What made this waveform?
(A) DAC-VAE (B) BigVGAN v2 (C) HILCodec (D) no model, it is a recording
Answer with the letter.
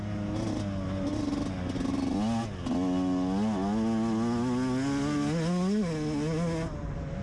D